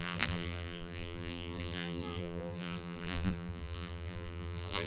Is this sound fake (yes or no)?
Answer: yes